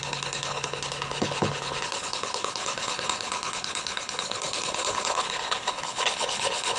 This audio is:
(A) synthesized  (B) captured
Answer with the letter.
A